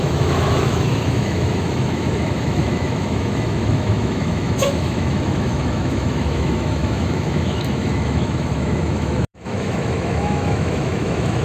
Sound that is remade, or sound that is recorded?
remade